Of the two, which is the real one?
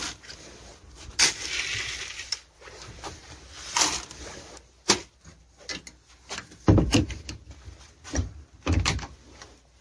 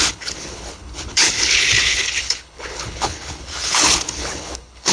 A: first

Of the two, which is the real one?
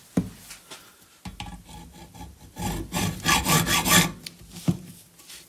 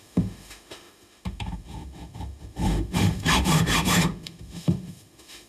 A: first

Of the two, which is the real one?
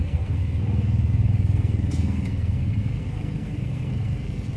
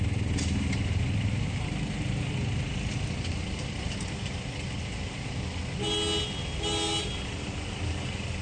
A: second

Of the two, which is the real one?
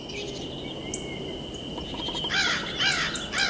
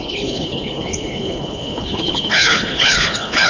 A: first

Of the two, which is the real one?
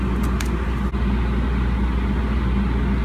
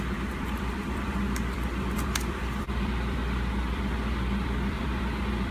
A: first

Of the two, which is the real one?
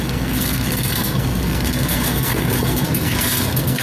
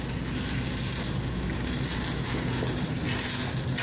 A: second